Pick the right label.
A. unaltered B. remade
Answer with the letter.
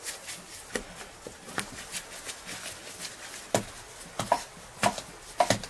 A